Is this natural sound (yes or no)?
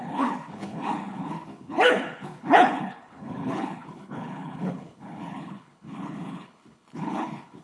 no